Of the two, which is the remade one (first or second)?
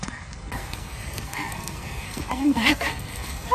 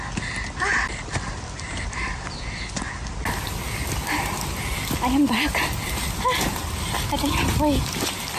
first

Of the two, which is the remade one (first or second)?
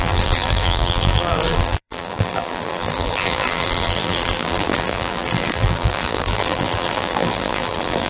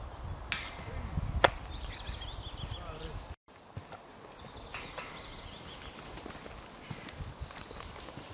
first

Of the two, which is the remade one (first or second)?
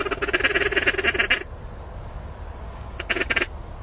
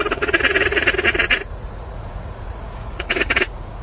second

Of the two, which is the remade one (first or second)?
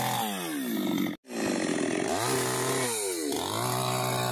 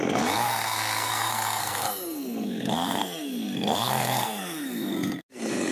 second